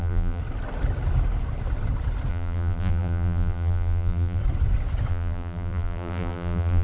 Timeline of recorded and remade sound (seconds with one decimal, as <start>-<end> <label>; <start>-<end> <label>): 0.0-0.4 remade; 0.4-2.3 recorded; 2.3-4.4 remade; 4.4-5.1 recorded; 5.1-6.8 remade